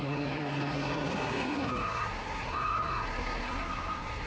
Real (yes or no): no